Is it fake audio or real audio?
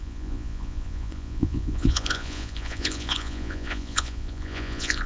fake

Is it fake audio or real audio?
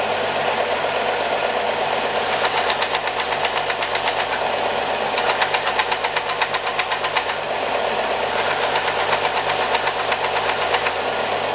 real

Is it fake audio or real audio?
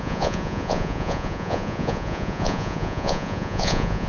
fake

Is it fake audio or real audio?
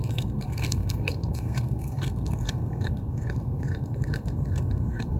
fake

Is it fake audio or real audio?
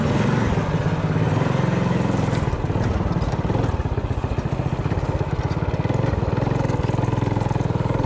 real